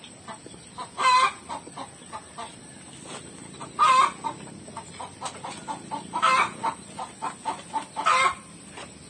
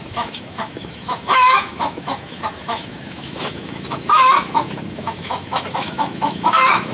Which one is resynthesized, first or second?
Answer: second